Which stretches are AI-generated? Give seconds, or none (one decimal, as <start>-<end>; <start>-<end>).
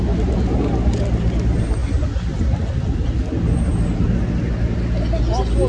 none